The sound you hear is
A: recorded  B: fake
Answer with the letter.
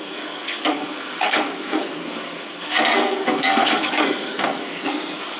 B